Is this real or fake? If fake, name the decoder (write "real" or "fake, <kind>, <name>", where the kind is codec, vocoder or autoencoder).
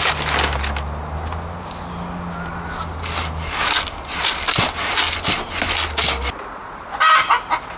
real